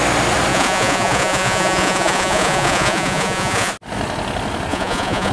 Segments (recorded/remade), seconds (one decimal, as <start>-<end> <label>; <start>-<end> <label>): 0.0-0.5 recorded; 0.5-3.7 remade; 3.7-4.7 recorded; 4.7-5.3 remade

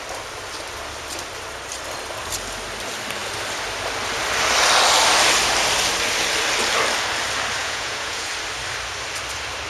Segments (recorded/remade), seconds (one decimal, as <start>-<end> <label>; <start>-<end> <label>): 0.0-7.6 recorded; 7.6-8.3 remade; 8.3-9.7 recorded